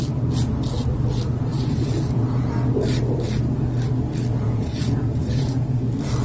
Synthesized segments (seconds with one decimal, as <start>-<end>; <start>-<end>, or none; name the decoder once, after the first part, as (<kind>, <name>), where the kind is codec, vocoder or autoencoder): 1.5-2.5 (vocoder, Vocos); 4.3-5.8

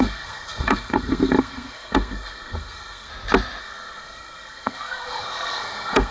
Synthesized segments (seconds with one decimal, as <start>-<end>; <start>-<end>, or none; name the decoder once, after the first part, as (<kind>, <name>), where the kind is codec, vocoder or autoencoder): 0.0-3.1 (codec, SNAC); 3.6-6.1

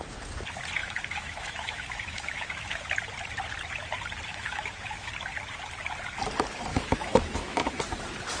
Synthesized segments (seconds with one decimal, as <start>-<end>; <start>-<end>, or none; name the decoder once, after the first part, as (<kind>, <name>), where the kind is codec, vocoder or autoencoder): 0.8-2.9 (autoencoder, DAC-VAE); 4.3-5.1; 6.7-7.8

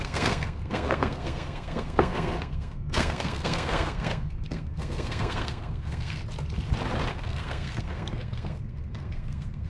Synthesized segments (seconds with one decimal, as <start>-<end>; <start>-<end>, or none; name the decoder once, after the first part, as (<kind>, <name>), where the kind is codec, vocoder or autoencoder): 0.0-6.2 (codec, SNAC); 7.1-9.7

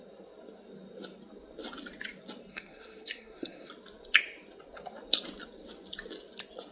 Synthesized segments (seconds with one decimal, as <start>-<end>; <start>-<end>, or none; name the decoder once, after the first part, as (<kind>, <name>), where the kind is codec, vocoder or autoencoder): 2.5-3.7 (codec, SNAC)